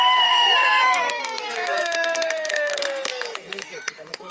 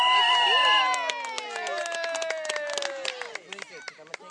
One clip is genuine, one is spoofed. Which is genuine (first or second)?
second